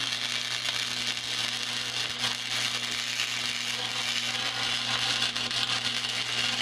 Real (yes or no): yes